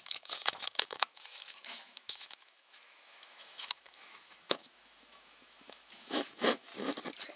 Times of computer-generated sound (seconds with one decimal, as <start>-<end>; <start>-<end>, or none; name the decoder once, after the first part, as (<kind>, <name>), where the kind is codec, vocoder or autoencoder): 0.0-6.7 (autoencoder, DAC-VAE)